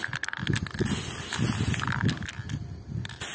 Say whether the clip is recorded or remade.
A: recorded